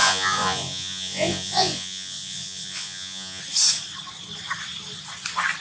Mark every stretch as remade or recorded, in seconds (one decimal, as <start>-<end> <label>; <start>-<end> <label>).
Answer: 0.0-3.4 remade; 3.4-5.6 recorded